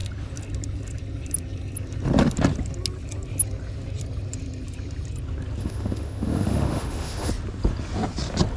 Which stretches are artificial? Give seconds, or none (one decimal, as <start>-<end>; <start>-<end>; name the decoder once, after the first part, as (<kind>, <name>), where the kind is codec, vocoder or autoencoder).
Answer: 5.6-7.3 (autoencoder, DAC-VAE)